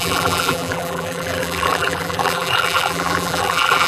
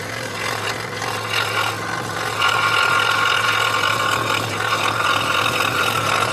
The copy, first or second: first